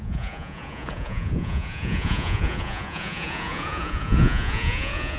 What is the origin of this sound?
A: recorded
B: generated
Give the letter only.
B